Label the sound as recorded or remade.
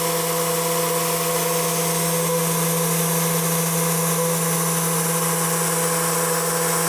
recorded